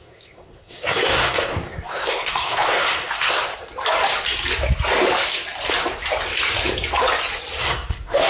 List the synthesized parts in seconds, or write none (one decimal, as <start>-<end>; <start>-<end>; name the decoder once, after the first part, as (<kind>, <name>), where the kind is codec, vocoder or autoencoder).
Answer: 0.0-3.5 (codec, SNAC); 7.6-8.3